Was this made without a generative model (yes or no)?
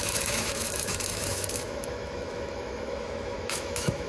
no